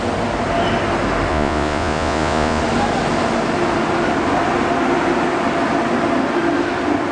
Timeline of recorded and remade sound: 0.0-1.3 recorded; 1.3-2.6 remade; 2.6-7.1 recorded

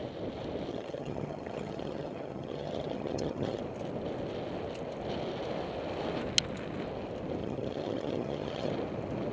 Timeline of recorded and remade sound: 0.0-0.7 recorded; 0.7-3.6 remade; 3.6-7.4 recorded; 7.4-8.7 remade; 8.7-9.3 recorded

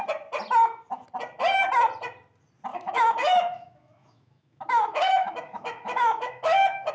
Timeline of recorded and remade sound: 0.0-2.7 recorded; 2.7-6.9 remade

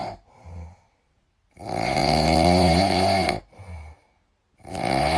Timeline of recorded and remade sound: 0.0-5.2 recorded

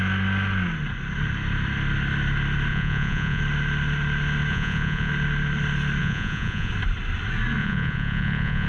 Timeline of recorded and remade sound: 0.0-2.7 recorded; 2.7-3.4 remade; 3.4-4.5 recorded; 4.5-5.1 remade; 5.1-6.0 recorded; 6.0-6.7 remade; 6.7-7.6 recorded; 7.6-8.7 remade

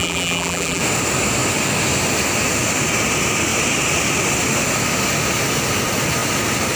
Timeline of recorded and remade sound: 0.0-0.8 remade; 0.8-6.8 recorded

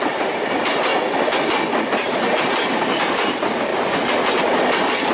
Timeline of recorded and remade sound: 0.0-0.9 remade; 0.9-2.8 recorded; 2.8-3.7 remade; 3.7-5.1 recorded

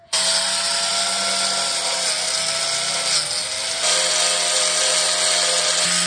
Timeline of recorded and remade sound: 0.0-6.1 recorded